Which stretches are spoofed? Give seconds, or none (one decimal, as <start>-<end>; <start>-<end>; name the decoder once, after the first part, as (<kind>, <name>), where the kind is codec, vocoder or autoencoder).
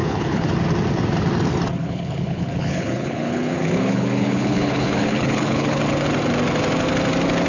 0.0-0.5 (codec, HILCodec); 1.8-5.8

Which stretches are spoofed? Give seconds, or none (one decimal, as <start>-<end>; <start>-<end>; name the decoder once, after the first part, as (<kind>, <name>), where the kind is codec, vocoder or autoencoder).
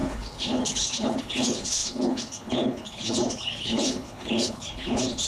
0.0-5.3 (codec, HILCodec)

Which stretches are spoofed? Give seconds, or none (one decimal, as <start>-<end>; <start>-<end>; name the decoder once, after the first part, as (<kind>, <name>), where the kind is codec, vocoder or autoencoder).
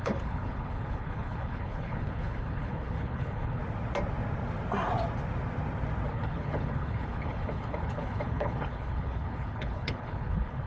0.0-3.6 (codec, HILCodec); 6.1-10.7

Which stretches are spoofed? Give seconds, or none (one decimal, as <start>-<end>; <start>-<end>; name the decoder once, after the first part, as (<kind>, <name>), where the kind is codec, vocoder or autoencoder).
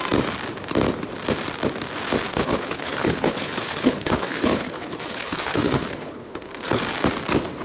2.3-6.8 (codec, HILCodec)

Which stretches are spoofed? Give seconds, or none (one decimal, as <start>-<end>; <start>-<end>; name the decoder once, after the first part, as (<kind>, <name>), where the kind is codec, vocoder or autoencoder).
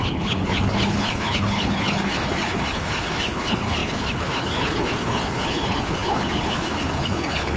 0.0-7.6 (codec, HILCodec)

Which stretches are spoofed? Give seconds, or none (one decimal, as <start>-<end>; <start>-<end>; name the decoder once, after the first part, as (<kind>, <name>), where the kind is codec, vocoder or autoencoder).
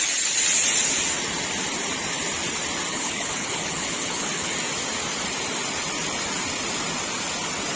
2.9-4.5 (codec, HILCodec)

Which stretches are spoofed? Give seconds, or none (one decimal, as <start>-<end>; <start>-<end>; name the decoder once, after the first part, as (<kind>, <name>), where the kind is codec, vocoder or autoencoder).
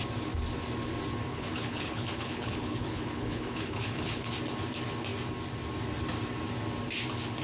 1.3-4.3 (codec, HILCodec)